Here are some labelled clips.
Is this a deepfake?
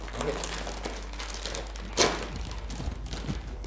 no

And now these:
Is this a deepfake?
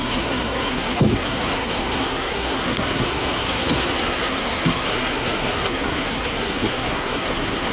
yes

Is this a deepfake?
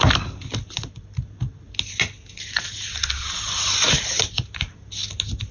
no